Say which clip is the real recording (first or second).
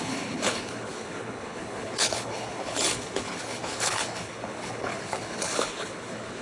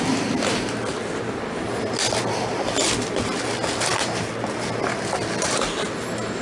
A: second